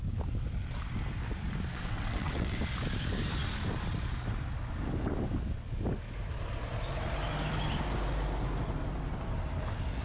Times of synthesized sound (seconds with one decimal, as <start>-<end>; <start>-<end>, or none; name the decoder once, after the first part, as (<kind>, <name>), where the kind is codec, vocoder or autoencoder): 1.7-2.6 (vocoder, WaveNeXt)